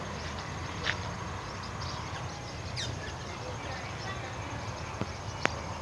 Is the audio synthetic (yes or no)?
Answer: no